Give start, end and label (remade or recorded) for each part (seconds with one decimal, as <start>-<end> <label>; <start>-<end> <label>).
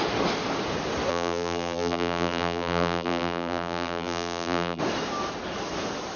0.0-1.1 recorded; 1.1-4.8 remade; 4.8-6.2 recorded